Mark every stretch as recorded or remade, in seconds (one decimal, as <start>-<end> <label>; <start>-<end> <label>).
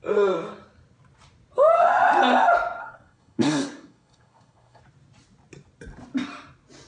0.0-2.8 recorded; 2.8-4.8 remade; 4.8-6.9 recorded